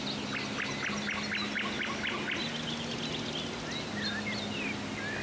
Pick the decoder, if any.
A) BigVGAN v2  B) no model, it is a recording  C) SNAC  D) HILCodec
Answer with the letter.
B